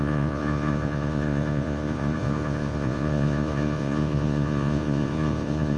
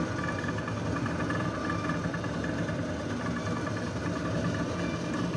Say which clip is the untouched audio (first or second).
second